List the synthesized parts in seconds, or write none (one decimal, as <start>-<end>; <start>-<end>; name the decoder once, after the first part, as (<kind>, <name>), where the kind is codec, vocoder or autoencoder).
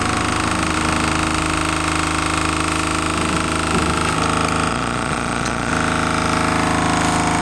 4.7-5.7 (vocoder, Vocos)